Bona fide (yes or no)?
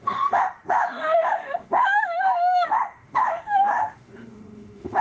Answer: no